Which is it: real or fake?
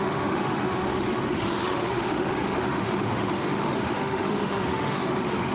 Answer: fake